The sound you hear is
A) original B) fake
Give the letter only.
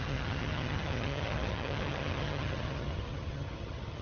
B